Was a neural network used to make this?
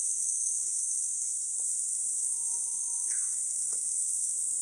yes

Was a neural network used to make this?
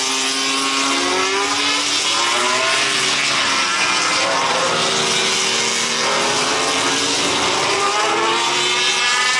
no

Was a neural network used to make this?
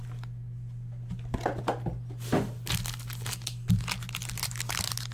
no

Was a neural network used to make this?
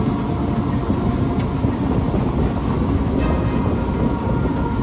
no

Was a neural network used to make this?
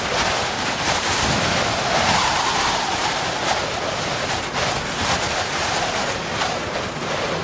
no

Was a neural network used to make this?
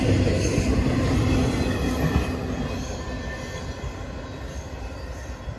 no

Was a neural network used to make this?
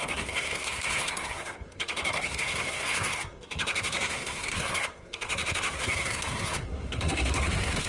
yes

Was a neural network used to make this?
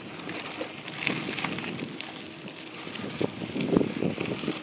no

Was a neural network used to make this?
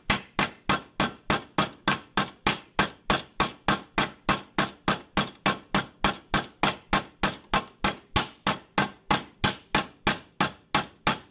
no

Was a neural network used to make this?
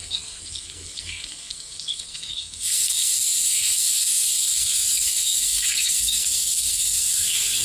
yes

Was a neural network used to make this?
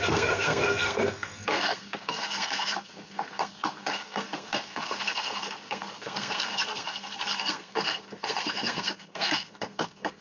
yes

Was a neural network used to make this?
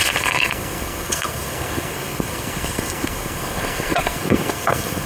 yes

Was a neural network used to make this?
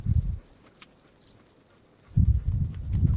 no